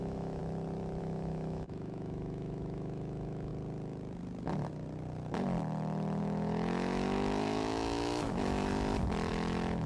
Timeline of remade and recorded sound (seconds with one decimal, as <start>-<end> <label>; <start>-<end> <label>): 0.0-0.4 remade; 0.4-1.0 recorded; 1.0-3.5 remade; 3.5-6.2 recorded; 6.2-8.7 remade; 8.7-9.3 recorded; 9.3-9.9 remade